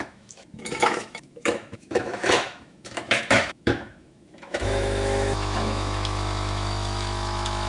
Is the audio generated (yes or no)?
yes